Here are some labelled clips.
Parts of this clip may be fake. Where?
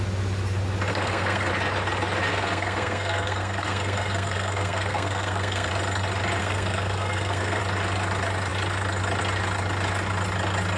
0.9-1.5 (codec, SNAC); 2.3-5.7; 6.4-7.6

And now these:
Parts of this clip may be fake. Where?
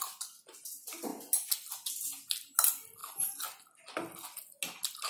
none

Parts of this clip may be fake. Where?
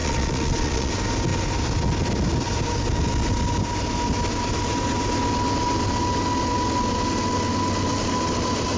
0.0-0.9 (vocoder, Vocos)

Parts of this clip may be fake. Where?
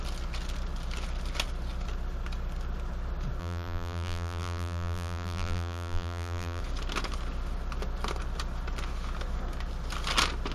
3.4-6.6 (vocoder, BigVGAN v2)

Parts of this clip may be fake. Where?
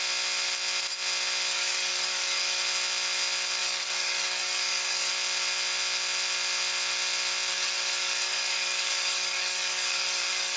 1.5-2.6 (codec, DAC); 3.6-5.1; 7.5-10.6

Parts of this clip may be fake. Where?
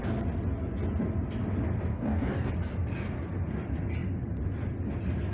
1.9-2.5 (codec, DAC)